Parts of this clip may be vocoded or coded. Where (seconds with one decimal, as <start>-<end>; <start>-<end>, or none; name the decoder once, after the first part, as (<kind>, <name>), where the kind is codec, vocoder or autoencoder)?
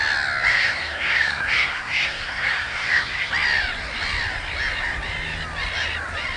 0.5-3.3 (codec, SNAC)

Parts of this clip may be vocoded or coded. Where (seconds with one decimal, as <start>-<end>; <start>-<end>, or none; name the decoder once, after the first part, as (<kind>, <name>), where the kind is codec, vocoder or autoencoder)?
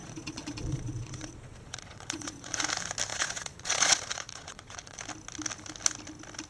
0.0-2.6 (vocoder, Vocos); 3.1-5.0